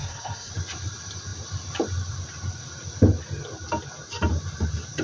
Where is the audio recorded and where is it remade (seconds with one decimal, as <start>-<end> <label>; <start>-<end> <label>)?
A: 0.0-0.5 remade; 0.5-5.0 recorded